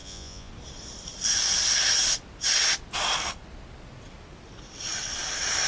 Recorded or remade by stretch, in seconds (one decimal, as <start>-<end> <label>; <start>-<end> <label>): 0.0-0.5 remade; 0.5-5.7 recorded